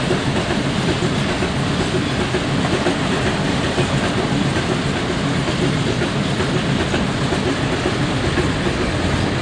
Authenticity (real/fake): real